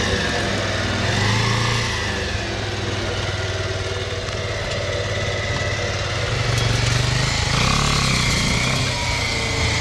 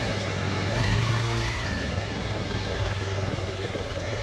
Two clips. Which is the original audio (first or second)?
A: first